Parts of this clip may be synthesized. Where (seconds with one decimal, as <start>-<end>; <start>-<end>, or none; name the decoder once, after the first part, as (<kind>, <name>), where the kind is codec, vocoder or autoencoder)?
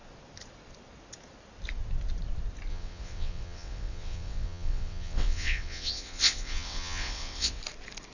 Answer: 2.7-7.6 (vocoder, WaveNeXt)